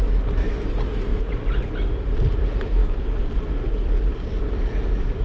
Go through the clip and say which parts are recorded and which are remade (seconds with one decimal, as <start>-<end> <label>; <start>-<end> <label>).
0.0-1.1 recorded; 1.1-1.6 remade; 1.6-2.8 recorded; 2.8-4.6 remade; 4.6-5.2 recorded